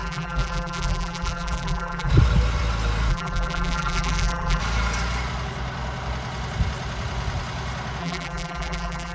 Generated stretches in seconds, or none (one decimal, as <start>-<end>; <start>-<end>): 0.0-2.1; 3.1-4.6; 8.0-9.1